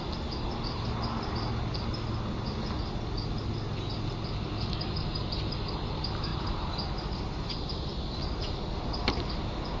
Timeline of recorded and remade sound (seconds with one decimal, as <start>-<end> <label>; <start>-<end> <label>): 0.0-9.8 recorded